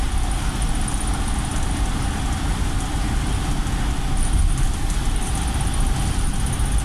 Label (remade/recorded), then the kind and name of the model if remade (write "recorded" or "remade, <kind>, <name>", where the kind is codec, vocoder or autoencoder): recorded